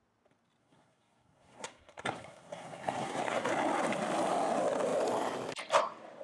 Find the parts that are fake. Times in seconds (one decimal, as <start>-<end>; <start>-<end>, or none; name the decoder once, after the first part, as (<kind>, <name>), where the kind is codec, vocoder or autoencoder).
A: 0.6-3.5 (codec, SNAC)